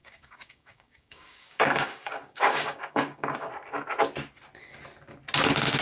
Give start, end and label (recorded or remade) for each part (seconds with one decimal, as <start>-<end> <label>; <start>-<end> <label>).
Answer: 0.0-3.5 remade; 3.5-5.8 recorded